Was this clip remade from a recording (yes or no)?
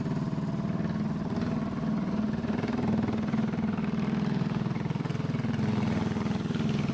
no